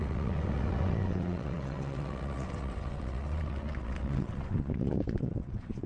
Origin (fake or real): fake